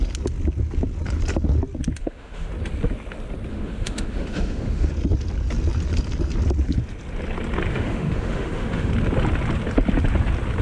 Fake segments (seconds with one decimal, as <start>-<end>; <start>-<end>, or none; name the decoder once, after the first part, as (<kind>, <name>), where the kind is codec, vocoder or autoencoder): 2.0-2.5 (autoencoder, DAC-VAE); 3.5-4.9; 7.7-8.9